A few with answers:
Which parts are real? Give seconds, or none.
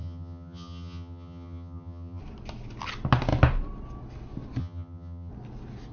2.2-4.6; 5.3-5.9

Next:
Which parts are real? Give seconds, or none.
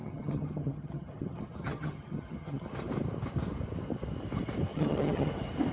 2.7-4.7; 5.3-5.7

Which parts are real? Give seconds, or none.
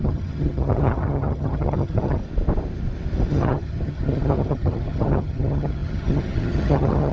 2.2-3.3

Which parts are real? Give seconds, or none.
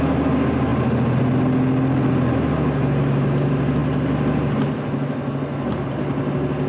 0.0-6.7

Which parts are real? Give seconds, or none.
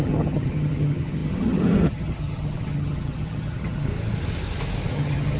3.9-4.9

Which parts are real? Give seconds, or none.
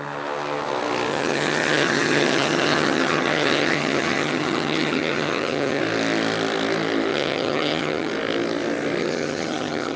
0.0-1.1; 5.8-7.1; 8.1-9.0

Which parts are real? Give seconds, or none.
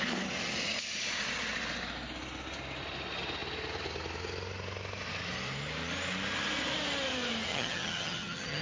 0.0-7.5